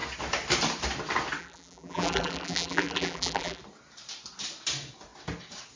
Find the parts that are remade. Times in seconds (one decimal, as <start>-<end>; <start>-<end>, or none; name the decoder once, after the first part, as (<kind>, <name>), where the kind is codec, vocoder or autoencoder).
1.4-3.6 (vocoder, BigVGAN v2)